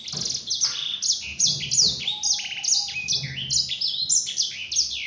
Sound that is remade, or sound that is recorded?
recorded